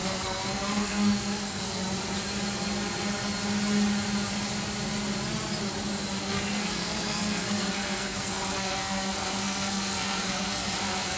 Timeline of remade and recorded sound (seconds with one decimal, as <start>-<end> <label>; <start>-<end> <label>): 0.0-1.8 remade; 1.8-6.2 recorded; 6.2-11.2 remade